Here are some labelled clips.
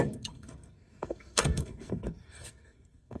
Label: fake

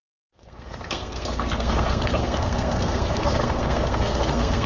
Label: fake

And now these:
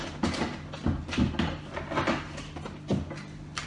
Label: real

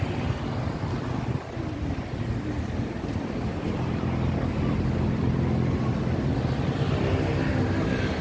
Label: real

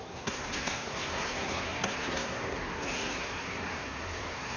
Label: fake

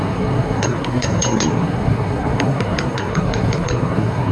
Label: fake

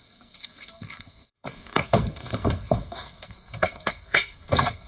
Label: fake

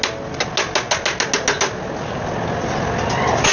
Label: real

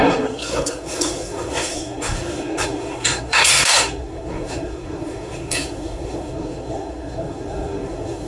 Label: fake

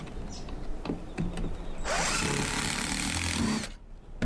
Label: real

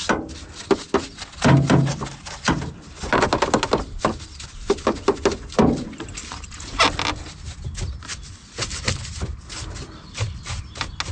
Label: real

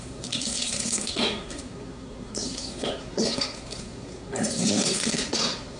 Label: fake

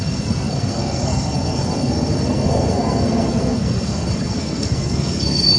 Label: fake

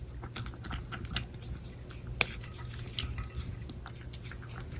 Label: real